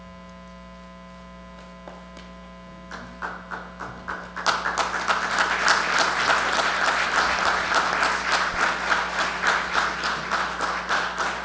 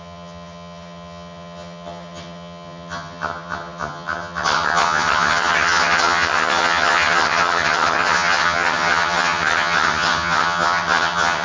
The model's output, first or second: second